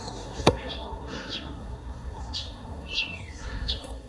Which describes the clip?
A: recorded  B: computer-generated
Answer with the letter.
B